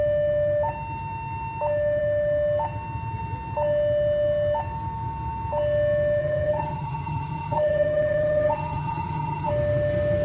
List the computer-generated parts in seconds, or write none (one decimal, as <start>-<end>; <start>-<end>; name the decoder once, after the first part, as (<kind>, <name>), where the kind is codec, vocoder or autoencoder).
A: 6.2-9.5 (vocoder, HiFi-GAN)

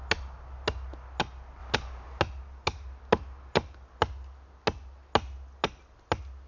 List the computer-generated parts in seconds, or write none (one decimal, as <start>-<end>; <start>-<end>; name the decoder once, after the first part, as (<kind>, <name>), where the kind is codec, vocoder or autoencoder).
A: none

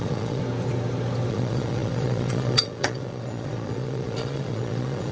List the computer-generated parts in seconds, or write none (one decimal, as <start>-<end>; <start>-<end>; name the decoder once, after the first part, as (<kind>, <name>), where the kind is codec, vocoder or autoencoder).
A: 0.0-0.4 (vocoder, Vocos); 1.3-5.1

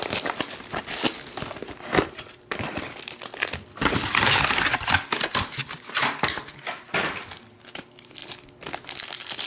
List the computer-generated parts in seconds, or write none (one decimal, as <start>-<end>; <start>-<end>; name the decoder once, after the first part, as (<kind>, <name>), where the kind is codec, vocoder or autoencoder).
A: 5.6-6.2 (vocoder, BigVGAN v2)

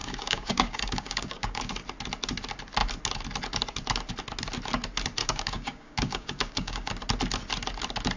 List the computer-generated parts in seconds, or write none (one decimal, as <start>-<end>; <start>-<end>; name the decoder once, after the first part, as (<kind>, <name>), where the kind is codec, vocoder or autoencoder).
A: 0.0-1.7 (codec, DAC); 5.2-6.9

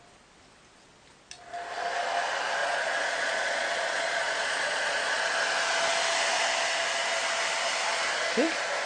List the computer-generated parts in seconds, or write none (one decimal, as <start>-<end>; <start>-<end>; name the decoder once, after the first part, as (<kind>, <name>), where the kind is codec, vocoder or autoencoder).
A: 2.6-5.2 (vocoder, Vocos)

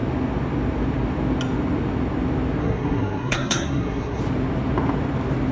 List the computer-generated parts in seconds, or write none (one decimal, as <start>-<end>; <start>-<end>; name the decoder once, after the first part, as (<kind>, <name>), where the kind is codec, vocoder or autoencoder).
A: 2.6-4.2 (codec, SNAC)

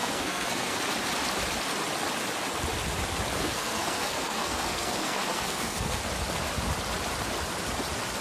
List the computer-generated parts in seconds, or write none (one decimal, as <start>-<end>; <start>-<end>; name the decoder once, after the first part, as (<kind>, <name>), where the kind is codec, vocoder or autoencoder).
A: 0.0-0.8 (codec, SNAC); 3.3-6.0